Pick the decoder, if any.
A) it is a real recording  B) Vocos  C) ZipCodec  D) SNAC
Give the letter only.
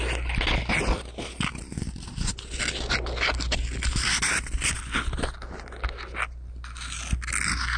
A